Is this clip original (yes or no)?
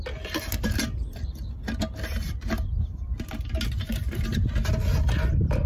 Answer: yes